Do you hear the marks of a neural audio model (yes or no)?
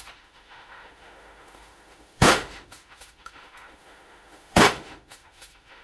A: yes